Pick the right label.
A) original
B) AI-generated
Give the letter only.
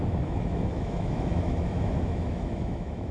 B